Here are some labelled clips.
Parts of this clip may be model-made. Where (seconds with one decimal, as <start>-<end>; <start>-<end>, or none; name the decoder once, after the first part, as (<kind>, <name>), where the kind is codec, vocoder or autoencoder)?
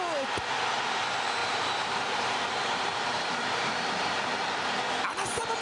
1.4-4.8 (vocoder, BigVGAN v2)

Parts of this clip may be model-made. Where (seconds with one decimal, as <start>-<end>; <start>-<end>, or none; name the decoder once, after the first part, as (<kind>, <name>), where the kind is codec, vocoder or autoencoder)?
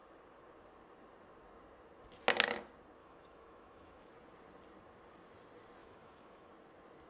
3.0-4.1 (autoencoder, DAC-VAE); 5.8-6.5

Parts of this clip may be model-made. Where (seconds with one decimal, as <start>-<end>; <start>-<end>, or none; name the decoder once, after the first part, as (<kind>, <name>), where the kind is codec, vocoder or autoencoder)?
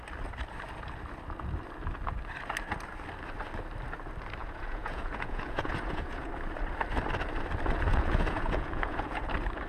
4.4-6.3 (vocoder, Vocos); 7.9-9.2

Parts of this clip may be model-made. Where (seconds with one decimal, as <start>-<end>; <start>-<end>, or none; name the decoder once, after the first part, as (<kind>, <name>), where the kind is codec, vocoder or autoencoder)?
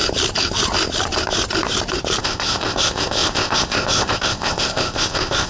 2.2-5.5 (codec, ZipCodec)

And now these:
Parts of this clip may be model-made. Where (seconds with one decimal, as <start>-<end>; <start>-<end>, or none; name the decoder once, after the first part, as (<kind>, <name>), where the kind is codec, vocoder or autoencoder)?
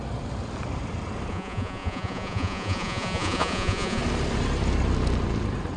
1.3-4.0 (vocoder, Vocos)